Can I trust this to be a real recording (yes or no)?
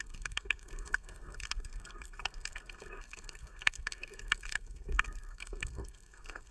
no